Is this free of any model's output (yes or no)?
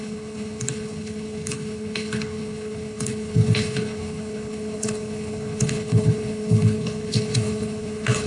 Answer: no